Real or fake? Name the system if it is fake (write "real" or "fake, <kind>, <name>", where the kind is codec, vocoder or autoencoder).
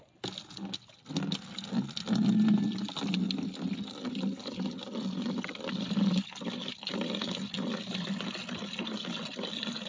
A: real